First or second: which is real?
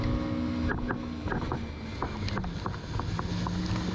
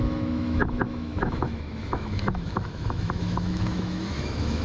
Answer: first